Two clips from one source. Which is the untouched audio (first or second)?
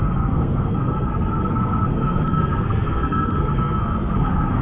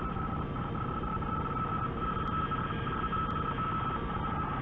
second